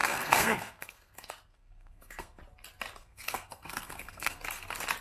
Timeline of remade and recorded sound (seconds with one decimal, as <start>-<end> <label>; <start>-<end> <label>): 0.0-2.4 remade; 2.4-3.0 recorded; 3.0-4.4 remade; 4.4-5.0 recorded